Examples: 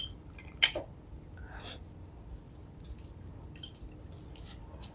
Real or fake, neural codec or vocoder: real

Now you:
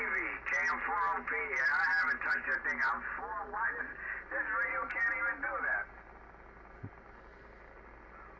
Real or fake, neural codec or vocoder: real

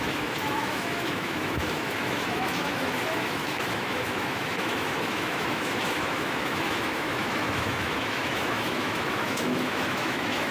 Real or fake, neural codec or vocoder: fake, autoencoder, DAC-VAE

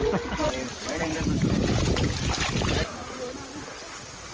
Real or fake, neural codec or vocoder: real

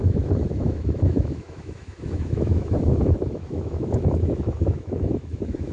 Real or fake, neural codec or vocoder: fake, autoencoder, DAC-VAE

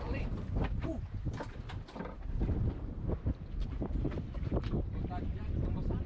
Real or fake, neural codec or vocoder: fake, vocoder, BigVGAN v2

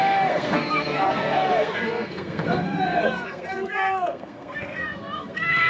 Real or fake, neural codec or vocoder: fake, codec, SNAC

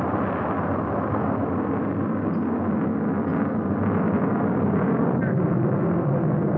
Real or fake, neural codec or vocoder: real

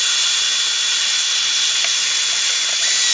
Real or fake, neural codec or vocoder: real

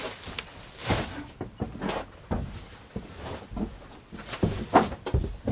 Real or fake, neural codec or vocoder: real